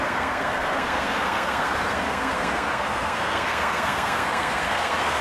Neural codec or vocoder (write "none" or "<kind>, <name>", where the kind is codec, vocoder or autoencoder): codec, SNAC